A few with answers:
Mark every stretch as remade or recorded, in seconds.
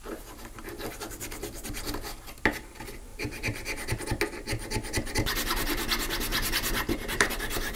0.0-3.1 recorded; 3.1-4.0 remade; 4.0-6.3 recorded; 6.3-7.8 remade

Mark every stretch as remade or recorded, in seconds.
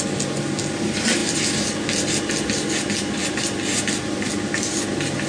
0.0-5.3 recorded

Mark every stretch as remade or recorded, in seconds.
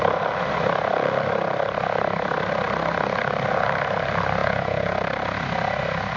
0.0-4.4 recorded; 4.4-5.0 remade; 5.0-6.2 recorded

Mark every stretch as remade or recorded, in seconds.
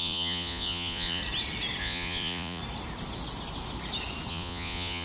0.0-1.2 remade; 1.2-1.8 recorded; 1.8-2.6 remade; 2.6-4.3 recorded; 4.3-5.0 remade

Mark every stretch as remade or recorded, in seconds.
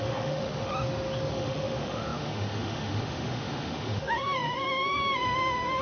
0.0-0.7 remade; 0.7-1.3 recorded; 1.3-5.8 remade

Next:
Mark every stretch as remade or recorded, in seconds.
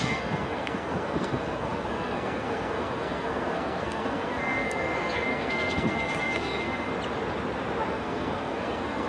0.0-6.9 remade; 6.9-7.9 recorded; 7.9-9.1 remade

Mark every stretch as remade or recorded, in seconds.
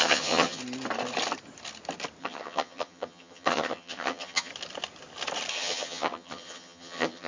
0.0-0.6 remade; 0.6-2.2 recorded; 2.2-4.5 remade; 4.5-5.5 recorded; 5.5-7.3 remade